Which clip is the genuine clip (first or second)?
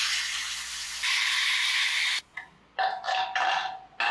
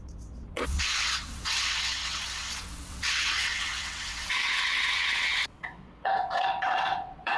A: first